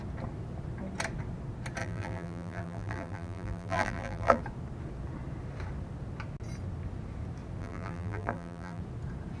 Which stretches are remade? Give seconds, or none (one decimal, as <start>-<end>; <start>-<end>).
1.8-4.4; 7.6-8.8